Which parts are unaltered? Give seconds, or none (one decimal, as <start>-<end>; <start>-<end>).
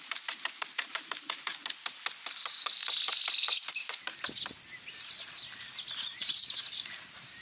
1.6-2.4; 2.8-5.9